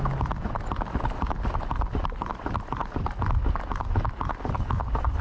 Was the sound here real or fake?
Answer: real